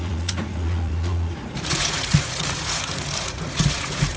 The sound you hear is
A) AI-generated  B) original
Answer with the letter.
A